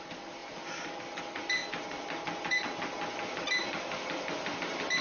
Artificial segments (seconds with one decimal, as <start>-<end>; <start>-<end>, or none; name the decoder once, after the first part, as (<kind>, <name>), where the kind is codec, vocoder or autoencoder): none